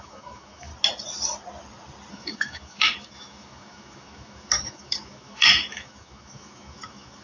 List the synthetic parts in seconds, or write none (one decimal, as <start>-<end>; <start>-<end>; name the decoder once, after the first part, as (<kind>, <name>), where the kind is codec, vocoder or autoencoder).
0.0-0.7 (autoencoder, DAC-VAE); 2.1-7.2